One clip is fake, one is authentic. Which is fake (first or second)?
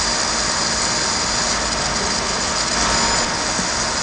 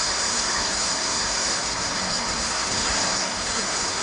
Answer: second